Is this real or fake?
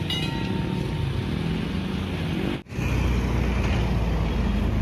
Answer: real